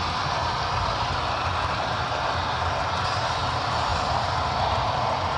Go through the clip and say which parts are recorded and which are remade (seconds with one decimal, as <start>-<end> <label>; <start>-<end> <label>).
0.0-5.4 recorded